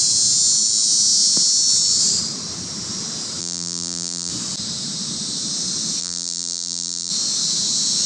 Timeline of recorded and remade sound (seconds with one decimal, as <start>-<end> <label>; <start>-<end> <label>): 0.0-3.4 recorded; 3.4-4.3 remade; 4.3-6.0 recorded; 6.0-7.1 remade; 7.1-8.1 recorded